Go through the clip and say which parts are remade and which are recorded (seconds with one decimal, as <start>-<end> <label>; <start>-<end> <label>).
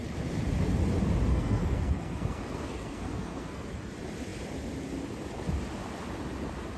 0.0-1.3 recorded; 1.3-3.9 remade; 3.9-6.8 recorded